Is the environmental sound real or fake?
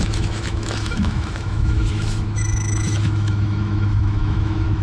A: fake